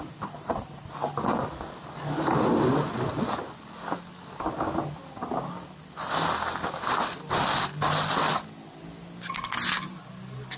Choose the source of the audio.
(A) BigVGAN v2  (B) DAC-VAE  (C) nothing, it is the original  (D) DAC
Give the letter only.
C